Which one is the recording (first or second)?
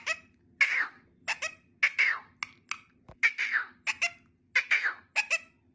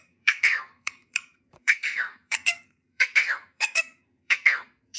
first